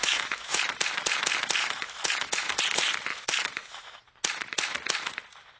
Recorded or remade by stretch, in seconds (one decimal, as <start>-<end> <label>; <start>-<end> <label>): 0.0-0.6 remade; 0.6-1.6 recorded; 1.6-2.6 remade; 2.6-3.1 recorded; 3.1-4.0 remade; 4.0-5.6 recorded